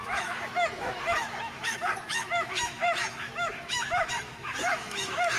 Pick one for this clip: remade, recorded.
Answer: remade